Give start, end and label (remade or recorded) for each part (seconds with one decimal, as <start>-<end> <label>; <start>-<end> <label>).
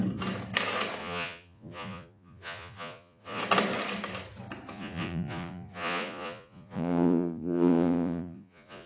0.0-1.0 recorded; 1.0-3.4 remade; 3.4-4.7 recorded; 4.7-8.9 remade